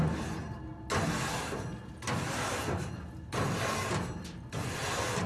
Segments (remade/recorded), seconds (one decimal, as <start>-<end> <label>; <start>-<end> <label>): 0.0-5.3 recorded